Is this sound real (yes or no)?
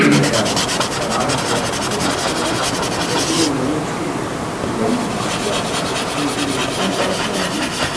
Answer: yes